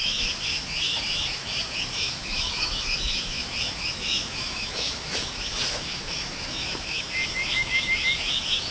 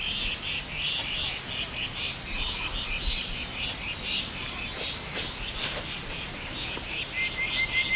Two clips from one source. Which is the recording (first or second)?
second